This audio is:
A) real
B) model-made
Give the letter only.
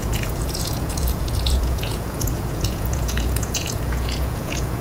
B